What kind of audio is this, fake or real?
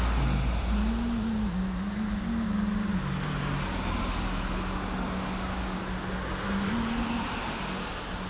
real